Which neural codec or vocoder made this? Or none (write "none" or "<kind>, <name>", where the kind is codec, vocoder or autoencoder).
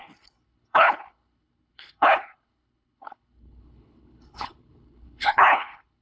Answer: codec, HILCodec